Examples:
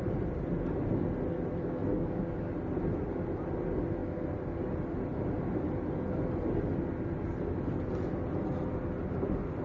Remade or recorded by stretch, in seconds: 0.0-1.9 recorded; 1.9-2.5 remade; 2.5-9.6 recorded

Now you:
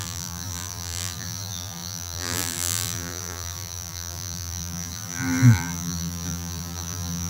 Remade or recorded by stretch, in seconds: 0.0-7.3 remade

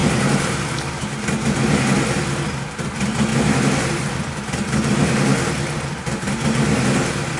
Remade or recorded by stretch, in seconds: 0.0-5.3 remade; 5.3-6.0 recorded; 6.0-7.4 remade

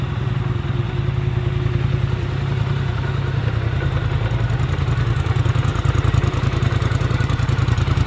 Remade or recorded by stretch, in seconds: 0.0-5.7 recorded; 5.7-8.1 remade